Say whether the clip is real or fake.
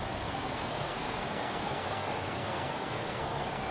fake